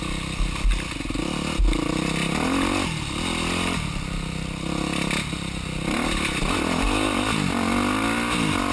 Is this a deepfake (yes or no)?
no